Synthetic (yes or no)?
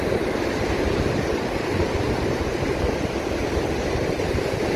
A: yes